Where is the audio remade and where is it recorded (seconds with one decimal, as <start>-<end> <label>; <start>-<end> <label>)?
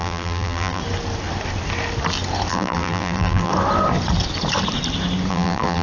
0.0-0.8 remade; 0.8-2.5 recorded; 2.5-3.5 remade; 3.5-5.3 recorded; 5.3-5.8 remade